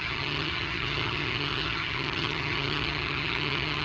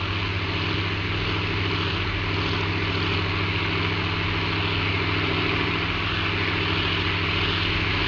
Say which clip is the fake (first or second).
first